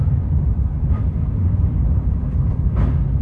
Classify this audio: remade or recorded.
remade